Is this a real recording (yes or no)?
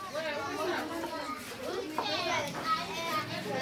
yes